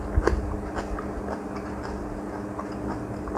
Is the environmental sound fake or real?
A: real